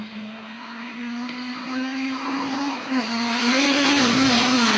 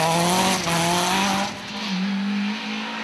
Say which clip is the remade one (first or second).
first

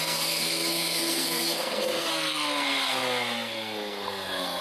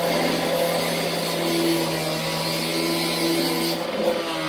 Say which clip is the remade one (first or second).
first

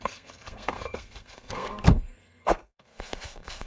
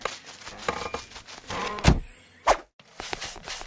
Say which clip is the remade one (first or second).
first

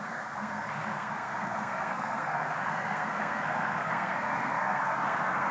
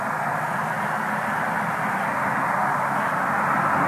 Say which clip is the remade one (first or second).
first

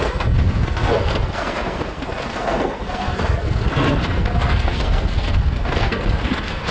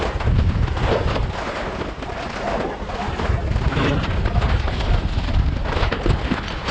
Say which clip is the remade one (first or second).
first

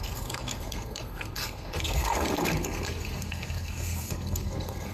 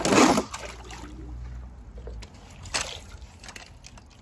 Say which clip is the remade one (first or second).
first